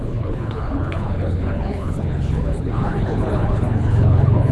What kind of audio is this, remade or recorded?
remade